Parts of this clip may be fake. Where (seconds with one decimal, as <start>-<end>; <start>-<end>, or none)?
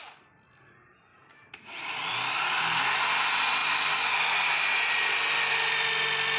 none